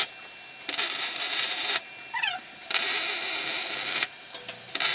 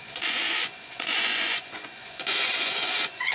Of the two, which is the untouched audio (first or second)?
first